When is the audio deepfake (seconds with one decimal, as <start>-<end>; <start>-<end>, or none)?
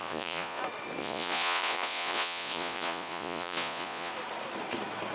0.0-0.6; 1.0-4.1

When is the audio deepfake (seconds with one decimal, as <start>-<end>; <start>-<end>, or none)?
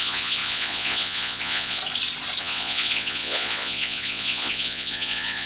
0.0-1.8; 2.4-5.5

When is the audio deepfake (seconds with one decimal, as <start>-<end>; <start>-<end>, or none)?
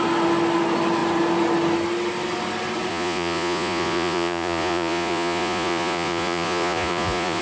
2.9-7.4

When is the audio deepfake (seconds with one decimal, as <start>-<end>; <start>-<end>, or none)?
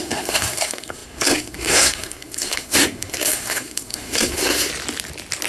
0.0-4.7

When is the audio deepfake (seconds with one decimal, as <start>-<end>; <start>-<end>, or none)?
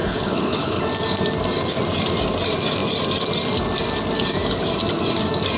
0.0-0.8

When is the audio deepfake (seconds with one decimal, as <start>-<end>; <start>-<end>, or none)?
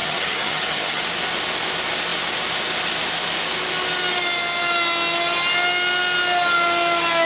0.0-1.0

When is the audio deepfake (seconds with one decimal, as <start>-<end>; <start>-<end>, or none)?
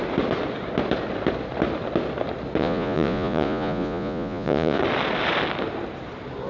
2.6-4.8